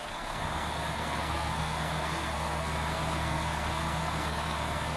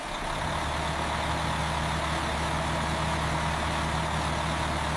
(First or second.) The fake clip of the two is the first